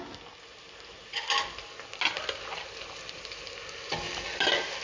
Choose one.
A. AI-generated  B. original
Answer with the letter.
B